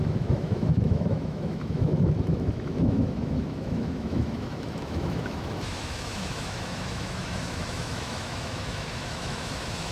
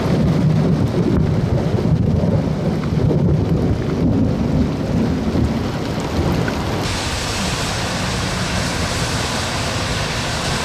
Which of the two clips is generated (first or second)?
first